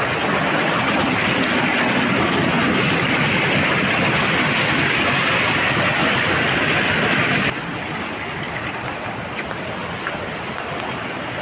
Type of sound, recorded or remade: recorded